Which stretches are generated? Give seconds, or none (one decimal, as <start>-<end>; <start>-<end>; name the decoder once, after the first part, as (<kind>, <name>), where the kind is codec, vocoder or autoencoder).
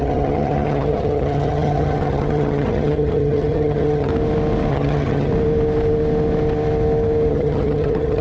0.0-4.1 (vocoder, HiFi-GAN); 4.7-5.3; 7.3-8.2